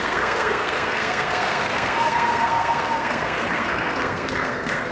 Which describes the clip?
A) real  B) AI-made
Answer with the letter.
B